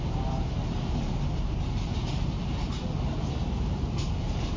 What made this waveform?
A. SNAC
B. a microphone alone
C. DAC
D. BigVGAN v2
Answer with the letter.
D